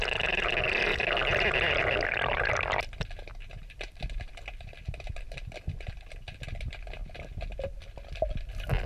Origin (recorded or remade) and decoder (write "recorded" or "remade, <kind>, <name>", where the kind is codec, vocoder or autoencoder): recorded